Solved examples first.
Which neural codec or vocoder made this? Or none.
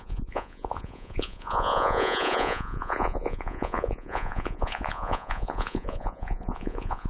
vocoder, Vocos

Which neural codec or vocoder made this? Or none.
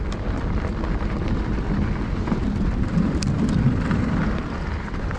none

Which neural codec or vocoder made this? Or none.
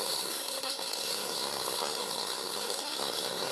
codec, SNAC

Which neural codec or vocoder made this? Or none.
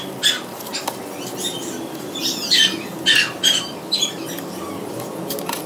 none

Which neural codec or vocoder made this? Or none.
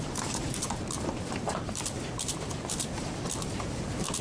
vocoder, BigVGAN v2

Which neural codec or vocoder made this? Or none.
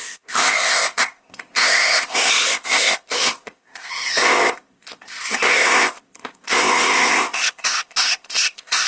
codec, ZipCodec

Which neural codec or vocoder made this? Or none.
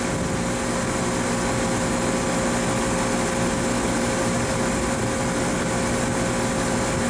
none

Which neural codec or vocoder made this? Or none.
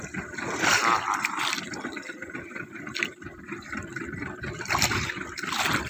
none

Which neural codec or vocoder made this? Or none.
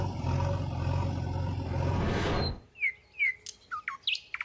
none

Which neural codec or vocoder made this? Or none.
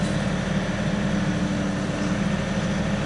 none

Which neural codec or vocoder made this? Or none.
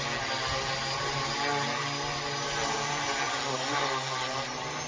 none